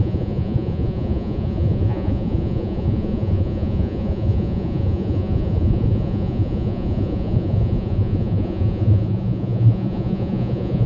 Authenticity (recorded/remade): remade